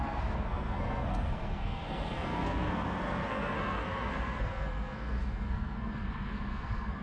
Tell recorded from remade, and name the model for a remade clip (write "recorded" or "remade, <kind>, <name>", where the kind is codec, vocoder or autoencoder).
remade, codec, SNAC